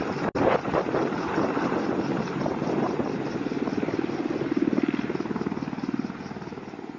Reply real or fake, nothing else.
real